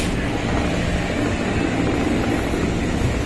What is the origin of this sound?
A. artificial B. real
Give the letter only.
B